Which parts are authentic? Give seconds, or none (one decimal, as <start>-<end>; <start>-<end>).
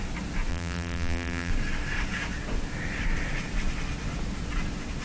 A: 0.0-0.5; 1.5-5.0